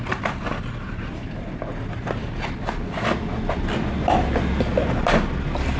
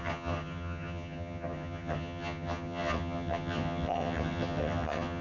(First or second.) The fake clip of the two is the second